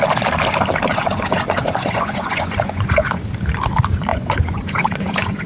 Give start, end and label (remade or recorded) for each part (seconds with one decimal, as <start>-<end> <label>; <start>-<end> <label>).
0.0-0.9 recorded; 0.9-3.2 remade; 3.2-4.1 recorded; 4.1-5.5 remade